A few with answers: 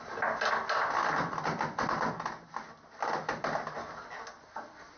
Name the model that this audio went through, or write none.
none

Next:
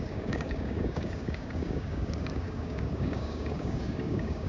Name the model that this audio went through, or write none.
codec, DAC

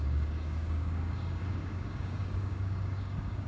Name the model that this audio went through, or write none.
codec, DAC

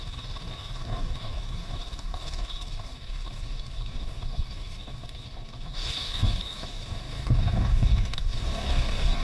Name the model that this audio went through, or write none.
codec, DAC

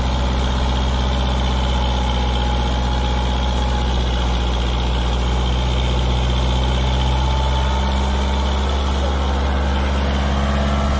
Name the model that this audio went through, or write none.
none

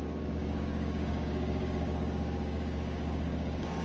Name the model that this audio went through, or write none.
codec, DAC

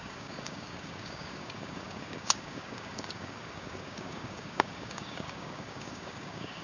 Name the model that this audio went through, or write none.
codec, DAC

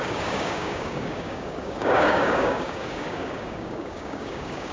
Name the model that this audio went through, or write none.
codec, DAC